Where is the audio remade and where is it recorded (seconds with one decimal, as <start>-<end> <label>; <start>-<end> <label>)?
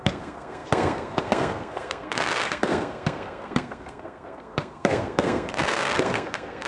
0.0-6.7 remade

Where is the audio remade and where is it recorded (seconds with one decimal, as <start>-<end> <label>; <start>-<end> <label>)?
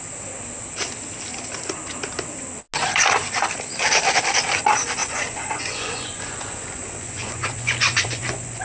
0.0-5.0 recorded; 5.0-8.6 remade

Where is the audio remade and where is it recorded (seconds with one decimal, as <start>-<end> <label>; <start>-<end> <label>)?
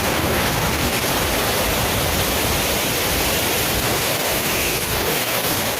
0.0-1.1 remade; 1.1-3.8 recorded; 3.8-5.8 remade